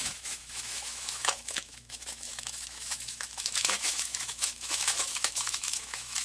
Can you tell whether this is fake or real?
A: fake